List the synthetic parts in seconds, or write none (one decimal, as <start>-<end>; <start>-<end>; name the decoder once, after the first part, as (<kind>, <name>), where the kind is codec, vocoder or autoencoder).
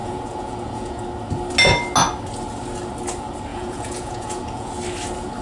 0.0-1.0 (vocoder, Vocos); 3.5-4.7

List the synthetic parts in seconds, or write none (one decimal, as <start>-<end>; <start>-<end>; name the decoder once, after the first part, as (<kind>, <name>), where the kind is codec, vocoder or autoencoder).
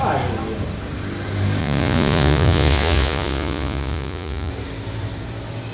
1.6-4.5 (vocoder, Vocos)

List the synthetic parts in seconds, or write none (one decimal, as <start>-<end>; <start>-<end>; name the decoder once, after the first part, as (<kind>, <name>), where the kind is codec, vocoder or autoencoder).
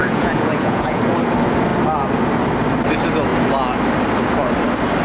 0.0-1.0 (vocoder, Vocos)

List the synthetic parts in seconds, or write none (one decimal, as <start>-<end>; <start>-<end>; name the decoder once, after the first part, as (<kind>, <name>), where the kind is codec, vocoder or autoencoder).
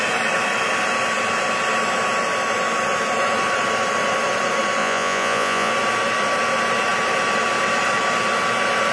4.8-5.7 (vocoder, Vocos)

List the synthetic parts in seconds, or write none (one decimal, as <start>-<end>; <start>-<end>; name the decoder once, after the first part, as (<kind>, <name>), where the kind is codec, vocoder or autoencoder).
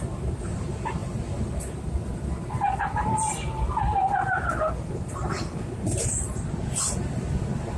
none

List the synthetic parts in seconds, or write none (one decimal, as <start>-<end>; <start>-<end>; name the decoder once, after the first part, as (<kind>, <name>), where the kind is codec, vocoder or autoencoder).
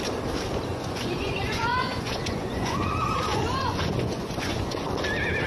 0.7-2.9 (vocoder, Vocos); 3.3-5.0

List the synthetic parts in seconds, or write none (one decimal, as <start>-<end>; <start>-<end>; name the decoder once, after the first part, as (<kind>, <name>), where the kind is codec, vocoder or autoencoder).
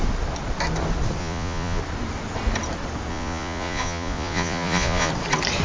1.2-1.8 (vocoder, Vocos); 3.1-5.1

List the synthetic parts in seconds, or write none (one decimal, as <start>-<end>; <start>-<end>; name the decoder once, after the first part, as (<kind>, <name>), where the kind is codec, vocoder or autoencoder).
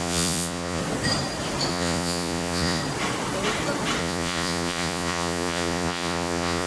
0.0-0.8 (vocoder, Vocos); 1.7-2.8; 4.0-6.7